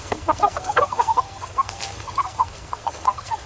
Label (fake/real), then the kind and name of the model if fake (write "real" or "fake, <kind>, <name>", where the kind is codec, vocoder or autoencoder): fake, codec, SNAC